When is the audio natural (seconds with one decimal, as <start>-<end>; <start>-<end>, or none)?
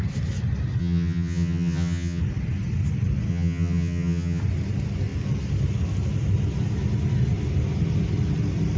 0.0-0.8; 2.2-3.3; 4.4-8.8